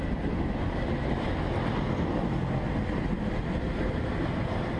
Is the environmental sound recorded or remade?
recorded